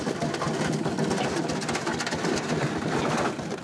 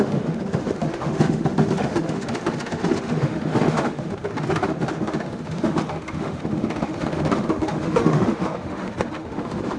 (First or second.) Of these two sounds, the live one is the first